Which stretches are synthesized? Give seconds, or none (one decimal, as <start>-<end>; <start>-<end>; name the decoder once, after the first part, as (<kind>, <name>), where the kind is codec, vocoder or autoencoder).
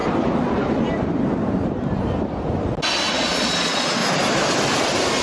3.1-4.0 (vocoder, Vocos)